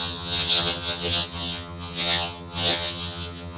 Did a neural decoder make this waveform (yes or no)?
yes